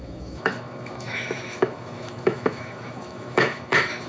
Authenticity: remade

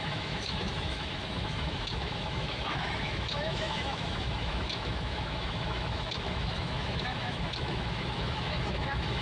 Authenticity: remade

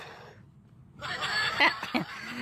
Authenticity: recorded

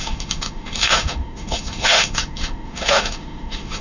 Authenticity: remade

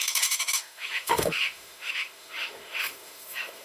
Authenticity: remade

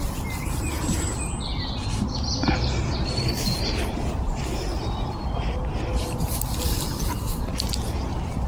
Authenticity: recorded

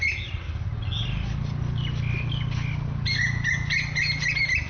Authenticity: recorded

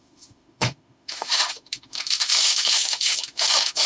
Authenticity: remade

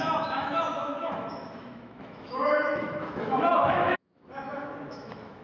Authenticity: remade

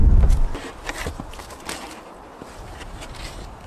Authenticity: recorded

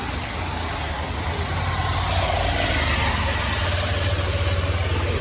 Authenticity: recorded